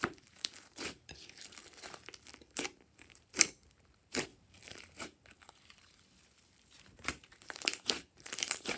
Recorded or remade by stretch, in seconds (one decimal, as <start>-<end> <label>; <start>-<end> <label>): 0.0-1.6 remade; 1.6-2.3 recorded; 2.3-8.8 remade